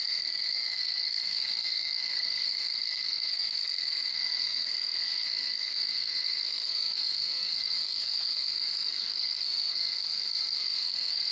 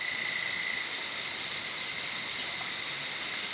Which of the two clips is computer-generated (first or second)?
first